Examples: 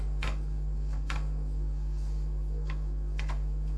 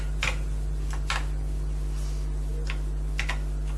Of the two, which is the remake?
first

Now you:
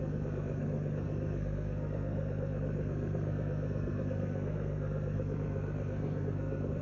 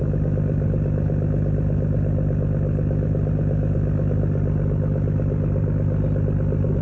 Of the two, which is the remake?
first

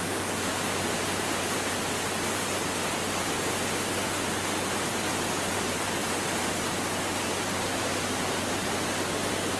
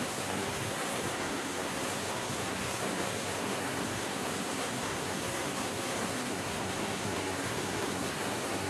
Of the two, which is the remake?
second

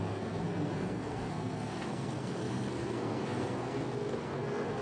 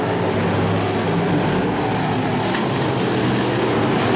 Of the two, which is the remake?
first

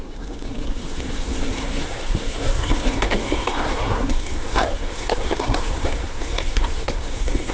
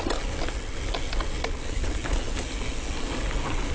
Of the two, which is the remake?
first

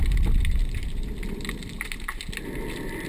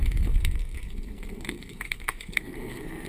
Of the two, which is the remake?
second